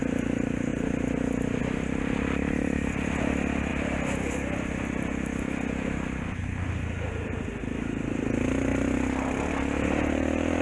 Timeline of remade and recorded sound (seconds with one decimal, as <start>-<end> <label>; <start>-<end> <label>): 0.0-10.6 recorded